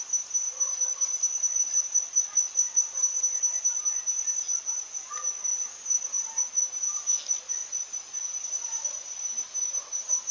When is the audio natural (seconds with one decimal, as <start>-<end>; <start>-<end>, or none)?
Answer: 0.0-10.3